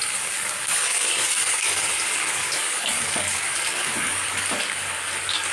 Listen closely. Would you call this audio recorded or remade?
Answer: remade